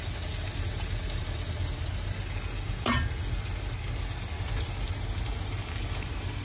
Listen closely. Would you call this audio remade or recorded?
recorded